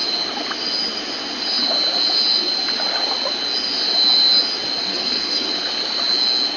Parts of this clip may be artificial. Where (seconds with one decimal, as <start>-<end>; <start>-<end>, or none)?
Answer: 4.9-5.5